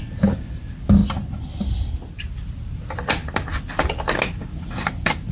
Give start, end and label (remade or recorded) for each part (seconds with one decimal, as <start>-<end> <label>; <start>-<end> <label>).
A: 0.0-5.3 recorded